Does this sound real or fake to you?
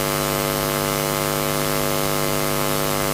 fake